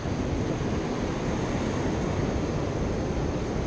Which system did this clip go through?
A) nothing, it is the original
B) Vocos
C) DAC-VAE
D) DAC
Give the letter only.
A